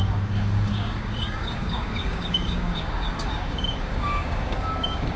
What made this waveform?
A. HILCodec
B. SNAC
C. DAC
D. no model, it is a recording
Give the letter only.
C